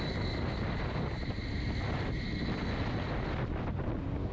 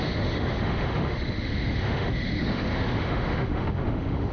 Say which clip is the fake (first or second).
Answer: second